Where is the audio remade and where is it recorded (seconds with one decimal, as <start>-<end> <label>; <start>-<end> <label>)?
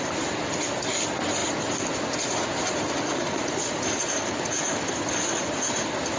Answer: 0.0-6.2 recorded